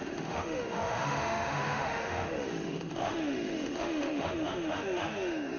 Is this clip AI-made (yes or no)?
yes